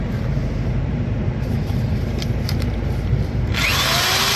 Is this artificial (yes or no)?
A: yes